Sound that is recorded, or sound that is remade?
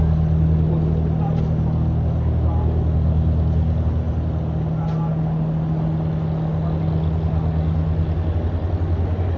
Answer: recorded